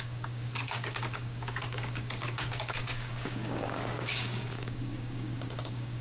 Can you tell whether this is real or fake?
fake